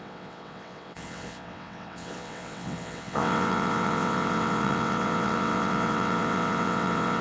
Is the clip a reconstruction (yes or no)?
yes